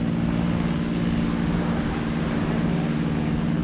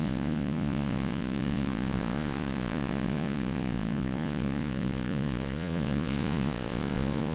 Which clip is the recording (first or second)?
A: first